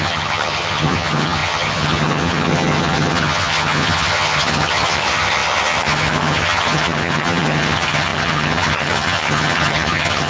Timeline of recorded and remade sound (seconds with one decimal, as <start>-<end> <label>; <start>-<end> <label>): 0.0-10.3 remade